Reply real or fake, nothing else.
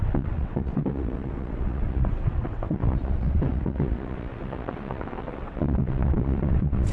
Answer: fake